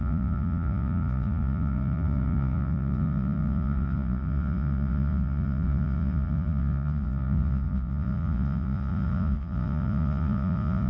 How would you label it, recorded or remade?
remade